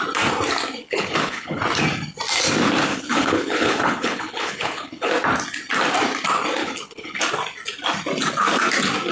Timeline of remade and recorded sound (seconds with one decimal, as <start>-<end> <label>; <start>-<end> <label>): 0.0-0.8 recorded; 0.8-1.6 remade; 1.6-2.9 recorded; 2.9-5.1 remade; 5.1-6.6 recorded; 6.6-7.2 remade; 7.2-9.1 recorded